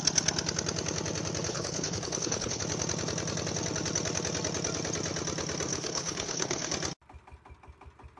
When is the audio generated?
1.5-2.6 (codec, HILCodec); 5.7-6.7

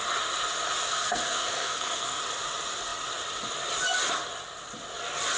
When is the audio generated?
0.9-2.2 (codec, SNAC)